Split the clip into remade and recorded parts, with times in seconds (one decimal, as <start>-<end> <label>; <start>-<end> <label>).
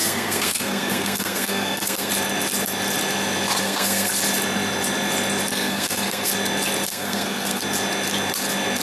0.0-2.1 remade; 2.1-3.6 recorded; 3.6-4.1 remade; 4.1-5.5 recorded; 5.5-6.3 remade; 6.3-6.9 recorded; 6.9-7.6 remade; 7.6-8.8 recorded